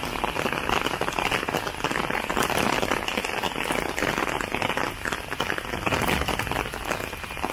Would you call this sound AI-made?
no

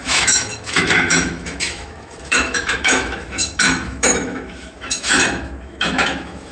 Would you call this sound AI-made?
yes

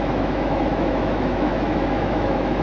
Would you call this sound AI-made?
yes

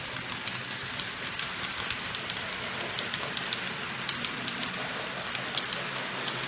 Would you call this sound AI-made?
no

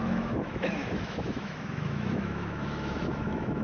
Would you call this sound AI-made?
yes